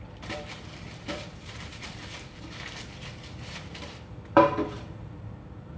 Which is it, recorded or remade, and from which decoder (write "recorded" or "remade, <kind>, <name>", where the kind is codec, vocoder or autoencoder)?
remade, vocoder, BigVGAN v2